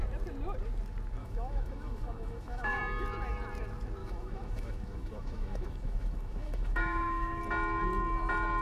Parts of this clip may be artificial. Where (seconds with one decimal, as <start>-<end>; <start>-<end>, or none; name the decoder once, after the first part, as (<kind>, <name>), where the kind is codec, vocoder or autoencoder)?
1.2-2.8 (autoencoder, DAC-VAE); 4.0-7.4